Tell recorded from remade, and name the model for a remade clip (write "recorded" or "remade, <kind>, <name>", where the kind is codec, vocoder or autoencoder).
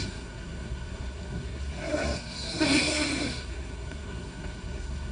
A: remade, codec, SNAC